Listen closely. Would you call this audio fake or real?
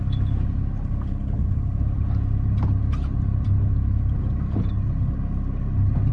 real